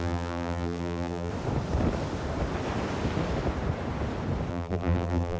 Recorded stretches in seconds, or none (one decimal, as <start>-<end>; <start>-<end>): 1.3-4.5